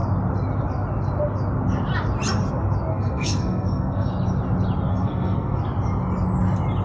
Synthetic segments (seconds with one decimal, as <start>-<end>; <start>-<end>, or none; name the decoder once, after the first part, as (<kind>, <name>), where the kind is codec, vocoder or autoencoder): 2.9-4.1 (codec, SNAC); 4.9-5.6